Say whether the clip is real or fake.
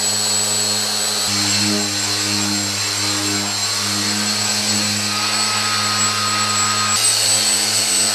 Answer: real